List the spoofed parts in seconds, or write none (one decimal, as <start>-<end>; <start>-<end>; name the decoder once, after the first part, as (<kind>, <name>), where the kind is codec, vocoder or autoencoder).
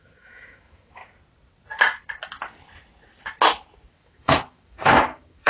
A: 0.0-1.0 (autoencoder, DAC-VAE); 3.9-5.5